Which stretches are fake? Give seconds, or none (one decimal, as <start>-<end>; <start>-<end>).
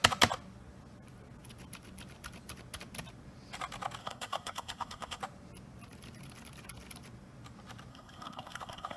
4.0-5.2; 7.9-9.0